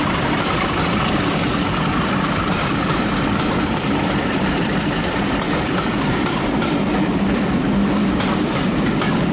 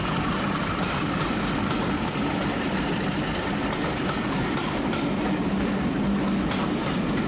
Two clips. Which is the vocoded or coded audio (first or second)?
first